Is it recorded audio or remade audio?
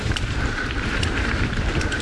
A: remade